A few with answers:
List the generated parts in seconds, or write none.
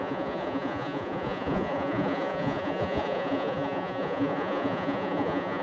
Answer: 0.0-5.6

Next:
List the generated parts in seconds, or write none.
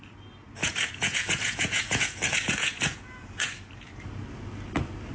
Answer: 0.6-3.7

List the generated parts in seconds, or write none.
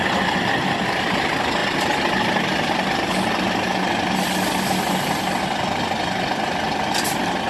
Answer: none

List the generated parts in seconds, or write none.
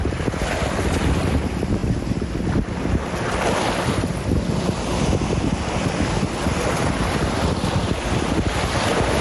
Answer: none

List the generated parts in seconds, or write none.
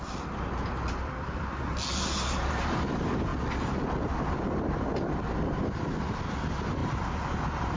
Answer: none